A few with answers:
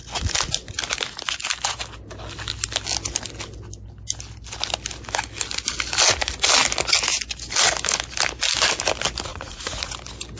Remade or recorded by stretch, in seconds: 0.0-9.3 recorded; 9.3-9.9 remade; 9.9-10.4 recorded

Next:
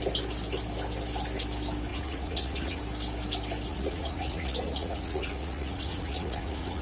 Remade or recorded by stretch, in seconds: 0.0-1.9 recorded; 1.9-2.8 remade; 2.8-3.7 recorded; 3.7-6.8 remade

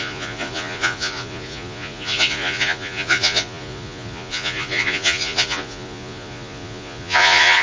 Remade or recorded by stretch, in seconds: 0.0-7.6 remade

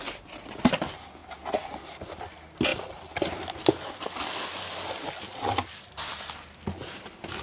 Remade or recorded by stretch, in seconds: 0.0-7.4 recorded

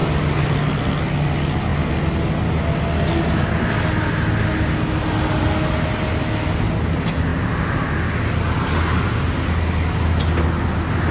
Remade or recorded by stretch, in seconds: 0.0-11.1 recorded

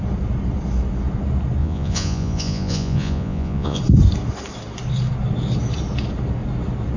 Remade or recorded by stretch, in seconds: 0.0-1.6 recorded; 1.6-3.8 remade; 3.8-7.0 recorded

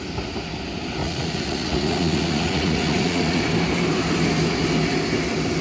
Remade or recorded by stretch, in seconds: 0.0-1.0 recorded; 1.0-3.4 remade; 3.4-5.6 recorded